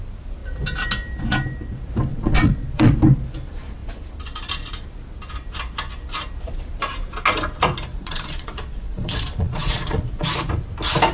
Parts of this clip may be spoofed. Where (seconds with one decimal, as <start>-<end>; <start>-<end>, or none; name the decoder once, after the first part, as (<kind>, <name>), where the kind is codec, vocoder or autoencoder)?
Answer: 2.1-2.9 (vocoder, Vocos); 7.9-10.3